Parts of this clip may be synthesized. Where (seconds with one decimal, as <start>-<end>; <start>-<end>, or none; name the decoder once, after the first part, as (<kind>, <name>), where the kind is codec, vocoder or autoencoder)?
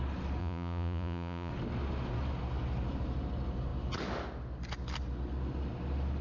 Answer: 0.4-1.5 (vocoder, Vocos)